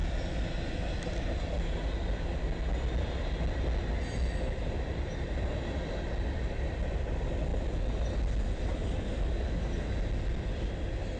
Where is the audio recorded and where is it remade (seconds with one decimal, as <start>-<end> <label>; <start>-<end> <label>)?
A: 0.0-11.2 recorded